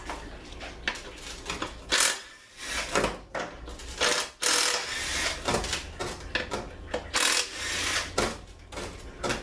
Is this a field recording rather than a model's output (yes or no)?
yes